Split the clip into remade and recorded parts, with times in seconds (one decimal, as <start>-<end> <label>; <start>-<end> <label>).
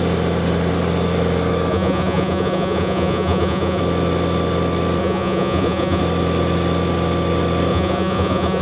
0.0-1.7 recorded; 1.7-3.8 remade; 3.8-5.0 recorded; 5.0-6.0 remade; 6.0-7.7 recorded; 7.7-8.6 remade